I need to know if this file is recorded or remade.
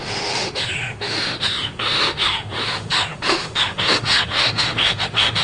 remade